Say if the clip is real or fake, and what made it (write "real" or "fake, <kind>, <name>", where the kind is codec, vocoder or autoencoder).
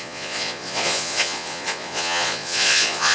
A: fake, vocoder, Vocos